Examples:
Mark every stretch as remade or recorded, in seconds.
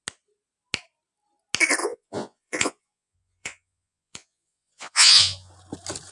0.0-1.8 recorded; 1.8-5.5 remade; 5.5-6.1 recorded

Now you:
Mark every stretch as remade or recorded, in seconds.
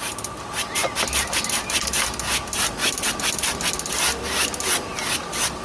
0.0-5.6 recorded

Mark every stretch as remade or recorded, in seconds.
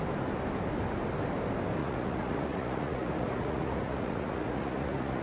0.0-1.8 recorded; 1.8-5.2 remade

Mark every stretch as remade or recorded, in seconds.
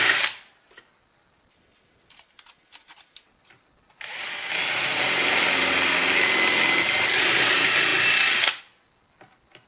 0.0-9.7 recorded